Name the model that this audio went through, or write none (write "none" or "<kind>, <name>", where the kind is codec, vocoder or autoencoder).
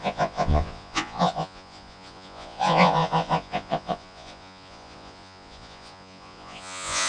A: vocoder, Vocos